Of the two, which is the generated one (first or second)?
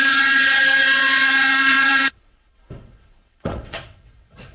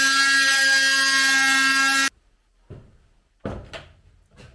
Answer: first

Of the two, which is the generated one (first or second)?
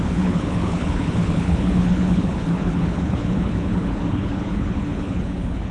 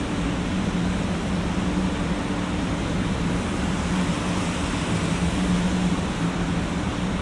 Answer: first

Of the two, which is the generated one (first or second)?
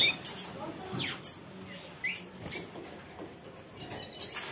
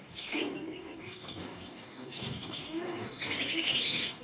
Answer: second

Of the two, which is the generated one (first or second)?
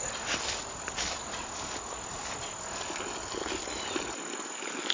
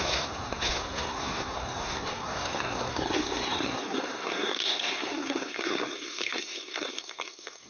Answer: second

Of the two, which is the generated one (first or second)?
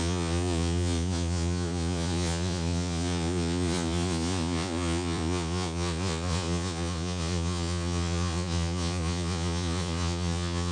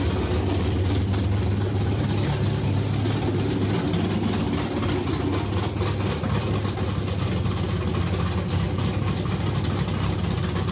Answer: first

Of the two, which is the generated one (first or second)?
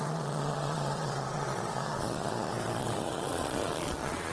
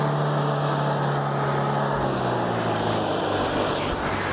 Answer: first